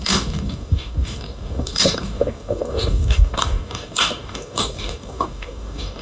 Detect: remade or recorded remade